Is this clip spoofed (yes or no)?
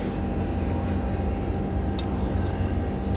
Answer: no